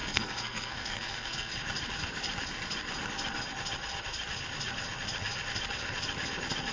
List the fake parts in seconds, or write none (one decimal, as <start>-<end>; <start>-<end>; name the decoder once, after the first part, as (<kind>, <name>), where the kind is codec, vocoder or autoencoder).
0.0-1.5 (codec, SNAC)